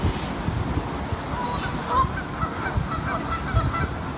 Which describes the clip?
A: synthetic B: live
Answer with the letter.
B